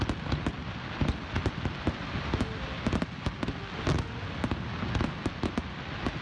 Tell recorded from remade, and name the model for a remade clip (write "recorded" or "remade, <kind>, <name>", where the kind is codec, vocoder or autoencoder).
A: recorded